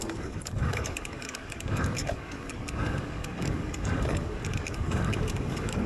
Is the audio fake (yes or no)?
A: yes